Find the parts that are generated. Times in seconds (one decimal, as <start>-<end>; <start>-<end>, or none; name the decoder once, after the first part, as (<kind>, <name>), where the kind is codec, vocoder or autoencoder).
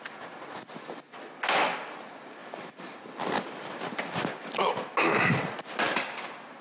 2.4-6.6 (vocoder, BigVGAN v2)